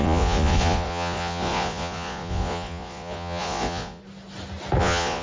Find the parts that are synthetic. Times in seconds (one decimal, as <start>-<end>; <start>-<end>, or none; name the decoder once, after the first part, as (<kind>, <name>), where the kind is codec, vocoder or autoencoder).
0.0-4.0 (vocoder, Vocos); 4.8-5.2